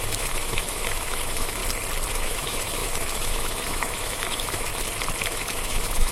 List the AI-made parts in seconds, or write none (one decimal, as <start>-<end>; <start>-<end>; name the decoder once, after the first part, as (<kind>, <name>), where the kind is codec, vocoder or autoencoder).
0.0-1.6 (autoencoder, DAC-VAE); 2.1-4.7; 5.2-6.1

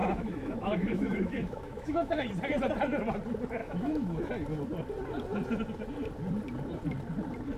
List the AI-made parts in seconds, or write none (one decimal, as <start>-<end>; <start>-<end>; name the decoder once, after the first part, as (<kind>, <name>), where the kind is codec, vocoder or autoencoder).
0.0-2.3 (autoencoder, DAC-VAE); 3.6-4.3

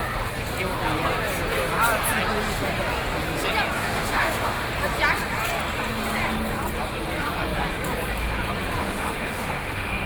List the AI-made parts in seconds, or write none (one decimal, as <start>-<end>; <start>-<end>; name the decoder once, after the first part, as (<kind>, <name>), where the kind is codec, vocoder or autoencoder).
3.8-4.7 (autoencoder, DAC-VAE); 8.8-10.1

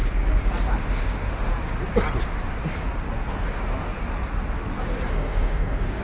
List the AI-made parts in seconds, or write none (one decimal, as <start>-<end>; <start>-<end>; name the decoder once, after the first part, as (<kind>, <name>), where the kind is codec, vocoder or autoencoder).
0.7-1.5 (autoencoder, DAC-VAE); 5.1-6.0